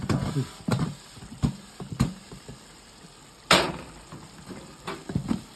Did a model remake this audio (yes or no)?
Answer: no